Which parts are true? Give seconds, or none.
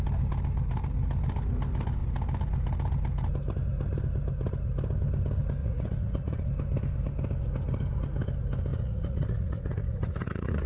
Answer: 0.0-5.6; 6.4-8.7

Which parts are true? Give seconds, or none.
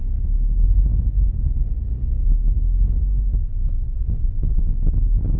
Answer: 0.9-3.7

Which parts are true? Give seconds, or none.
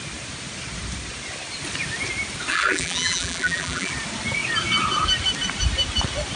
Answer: 0.0-2.5; 3.9-6.4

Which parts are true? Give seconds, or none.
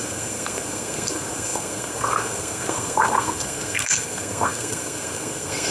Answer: none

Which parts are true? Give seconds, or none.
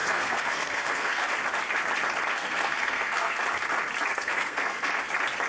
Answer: 1.3-2.3; 3.4-4.1; 4.9-5.5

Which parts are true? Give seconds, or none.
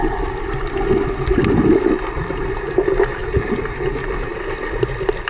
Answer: 0.0-5.3